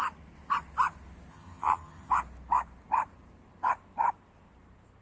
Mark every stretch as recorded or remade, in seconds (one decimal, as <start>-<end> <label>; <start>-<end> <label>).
0.0-1.3 recorded; 1.3-2.1 remade; 2.1-5.0 recorded